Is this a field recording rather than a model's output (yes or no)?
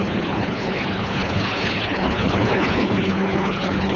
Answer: no